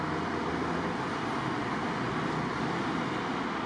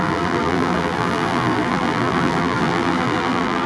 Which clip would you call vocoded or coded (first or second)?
second